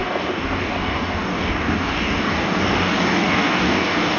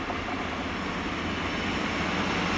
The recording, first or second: second